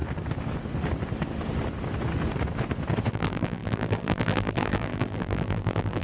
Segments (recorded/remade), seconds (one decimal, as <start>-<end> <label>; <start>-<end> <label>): 0.0-3.1 recorded; 3.1-6.0 remade